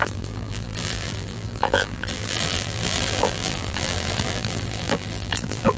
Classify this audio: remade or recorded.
remade